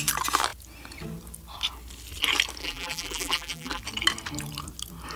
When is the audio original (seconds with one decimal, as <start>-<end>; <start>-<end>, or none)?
0.0-2.6; 3.8-5.2